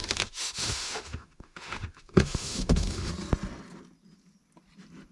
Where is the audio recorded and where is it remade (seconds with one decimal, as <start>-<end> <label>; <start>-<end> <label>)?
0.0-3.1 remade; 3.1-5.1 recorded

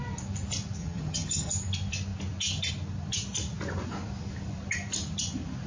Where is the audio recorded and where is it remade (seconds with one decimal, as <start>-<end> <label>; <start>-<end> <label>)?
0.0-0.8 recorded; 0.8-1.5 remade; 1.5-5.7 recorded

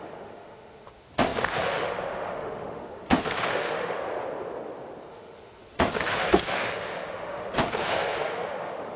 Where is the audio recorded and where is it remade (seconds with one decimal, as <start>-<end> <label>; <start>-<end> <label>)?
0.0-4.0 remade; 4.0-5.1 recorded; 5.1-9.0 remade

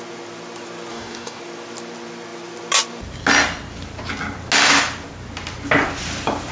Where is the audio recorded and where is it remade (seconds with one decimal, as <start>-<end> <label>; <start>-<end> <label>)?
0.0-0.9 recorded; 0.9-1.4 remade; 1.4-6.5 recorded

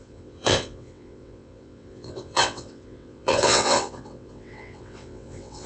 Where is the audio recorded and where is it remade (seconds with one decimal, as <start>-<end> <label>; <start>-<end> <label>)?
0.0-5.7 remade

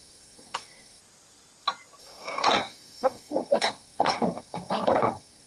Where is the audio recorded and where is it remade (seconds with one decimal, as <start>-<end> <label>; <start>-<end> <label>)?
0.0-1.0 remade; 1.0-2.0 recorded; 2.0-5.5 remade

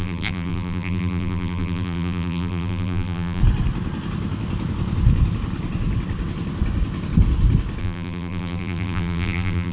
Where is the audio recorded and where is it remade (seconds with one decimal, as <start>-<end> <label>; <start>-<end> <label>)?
0.0-3.4 remade; 3.4-7.8 recorded; 7.8-9.7 remade